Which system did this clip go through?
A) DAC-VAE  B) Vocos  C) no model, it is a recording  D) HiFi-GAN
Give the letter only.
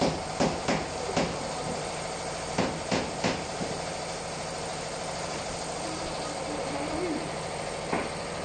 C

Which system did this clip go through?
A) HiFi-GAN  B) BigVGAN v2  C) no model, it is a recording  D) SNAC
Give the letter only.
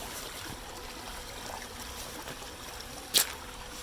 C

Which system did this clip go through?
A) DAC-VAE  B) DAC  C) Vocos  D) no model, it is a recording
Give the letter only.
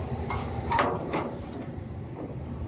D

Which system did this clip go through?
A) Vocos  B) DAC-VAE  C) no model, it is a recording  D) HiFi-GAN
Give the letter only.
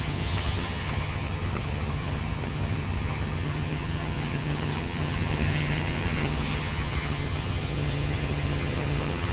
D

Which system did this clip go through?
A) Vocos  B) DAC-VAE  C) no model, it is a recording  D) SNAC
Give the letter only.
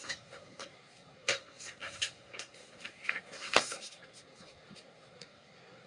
D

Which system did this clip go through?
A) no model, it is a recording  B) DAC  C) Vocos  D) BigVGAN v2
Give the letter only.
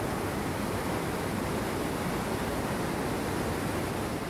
A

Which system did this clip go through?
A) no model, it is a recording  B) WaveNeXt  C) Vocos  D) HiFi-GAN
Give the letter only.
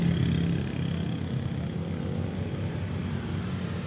A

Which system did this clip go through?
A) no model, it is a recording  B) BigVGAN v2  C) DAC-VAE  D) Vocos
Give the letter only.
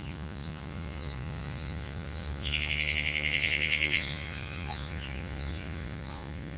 D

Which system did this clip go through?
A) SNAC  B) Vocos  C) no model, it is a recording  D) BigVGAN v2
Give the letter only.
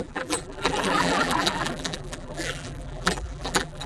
D